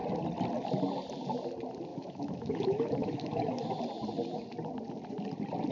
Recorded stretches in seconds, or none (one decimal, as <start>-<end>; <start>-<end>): 0.0-1.9; 3.8-5.7